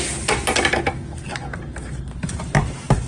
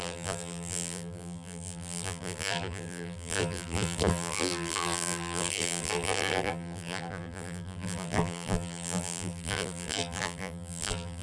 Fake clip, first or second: second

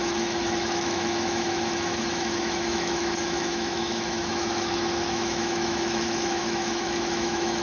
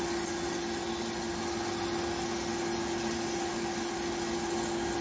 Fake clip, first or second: first